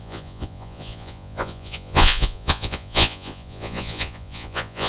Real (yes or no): no